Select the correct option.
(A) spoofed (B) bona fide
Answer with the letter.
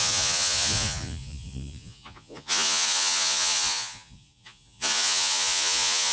A